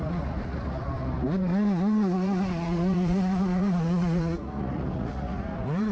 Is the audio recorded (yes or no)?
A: no